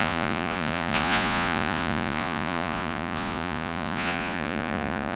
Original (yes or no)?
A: no